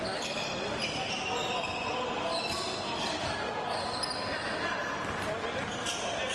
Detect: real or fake real